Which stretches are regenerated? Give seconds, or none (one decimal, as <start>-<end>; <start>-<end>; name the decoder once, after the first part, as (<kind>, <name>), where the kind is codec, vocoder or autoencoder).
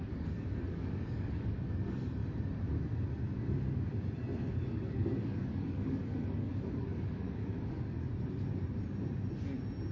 0.0-2.2 (codec, DAC); 4.5-8.0